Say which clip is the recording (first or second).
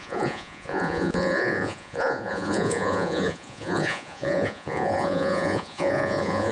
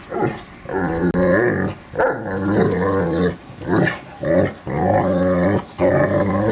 second